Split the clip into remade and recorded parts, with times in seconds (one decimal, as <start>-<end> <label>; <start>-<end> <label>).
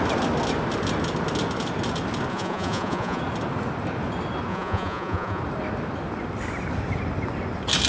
0.0-2.3 recorded; 2.3-3.2 remade; 3.2-4.5 recorded; 4.5-5.4 remade; 5.4-7.9 recorded